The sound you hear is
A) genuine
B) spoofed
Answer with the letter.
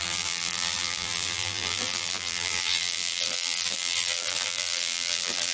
B